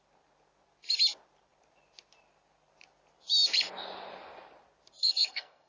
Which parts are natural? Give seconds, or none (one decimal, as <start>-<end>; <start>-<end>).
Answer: 0.0-5.0